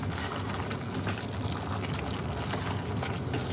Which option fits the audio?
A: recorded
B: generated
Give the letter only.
A